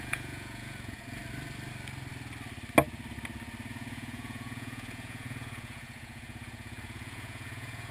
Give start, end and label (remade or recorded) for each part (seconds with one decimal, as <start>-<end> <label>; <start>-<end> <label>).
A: 0.0-1.2 remade; 1.2-3.7 recorded; 3.7-7.9 remade